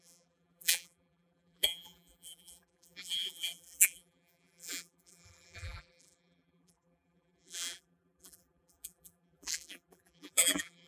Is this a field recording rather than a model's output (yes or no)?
no